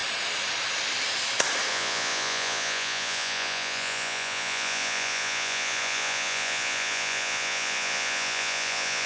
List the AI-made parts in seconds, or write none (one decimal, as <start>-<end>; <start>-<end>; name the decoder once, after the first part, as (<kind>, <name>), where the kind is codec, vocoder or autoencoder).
1.7-9.1 (vocoder, Vocos)